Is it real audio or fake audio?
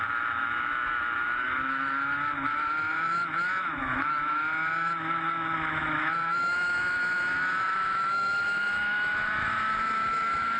fake